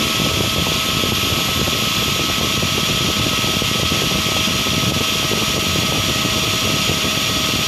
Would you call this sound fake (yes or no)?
no